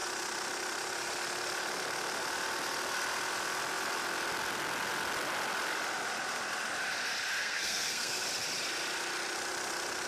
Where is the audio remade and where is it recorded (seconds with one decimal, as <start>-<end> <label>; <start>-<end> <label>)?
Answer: 0.0-7.4 recorded; 7.4-8.2 remade; 8.2-10.1 recorded